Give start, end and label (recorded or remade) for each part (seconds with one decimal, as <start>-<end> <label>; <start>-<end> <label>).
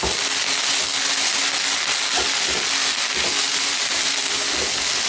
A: 0.0-5.1 recorded